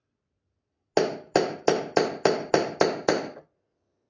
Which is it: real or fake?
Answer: real